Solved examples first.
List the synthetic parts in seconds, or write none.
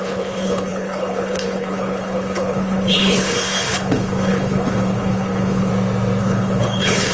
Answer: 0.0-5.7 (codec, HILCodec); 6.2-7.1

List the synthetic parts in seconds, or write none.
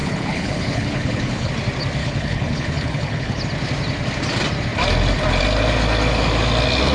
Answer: 0.0-1.5 (codec, HILCodec); 2.0-3.4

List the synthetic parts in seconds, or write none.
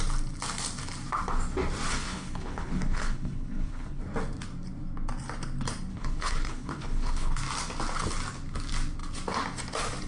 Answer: 1.9-4.0 (codec, HILCodec); 5.9-7.3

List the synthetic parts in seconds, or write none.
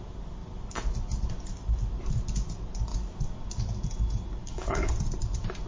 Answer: 4.4-4.9 (codec, HILCodec)